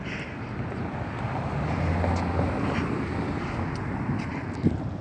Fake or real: real